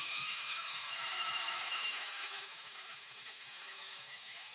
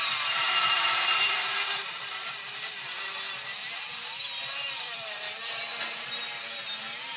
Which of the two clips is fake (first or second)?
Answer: first